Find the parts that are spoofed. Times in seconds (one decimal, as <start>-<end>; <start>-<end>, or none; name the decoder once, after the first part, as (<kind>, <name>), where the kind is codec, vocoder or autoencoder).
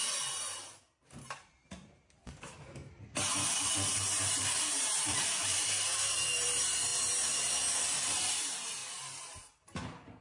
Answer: 1.2-2.8 (vocoder, BigVGAN v2); 4.3-8.8